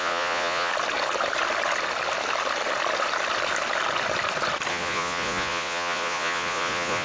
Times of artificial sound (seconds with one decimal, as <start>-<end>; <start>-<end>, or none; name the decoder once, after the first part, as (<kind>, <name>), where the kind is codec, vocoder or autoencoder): 0.0-0.7 (vocoder, Vocos); 4.7-7.0